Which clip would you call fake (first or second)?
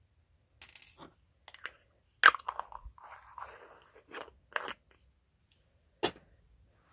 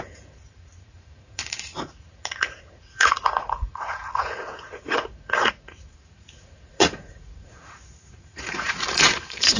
second